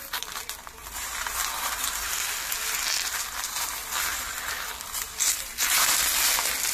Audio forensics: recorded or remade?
recorded